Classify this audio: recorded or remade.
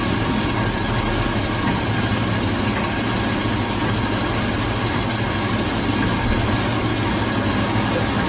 recorded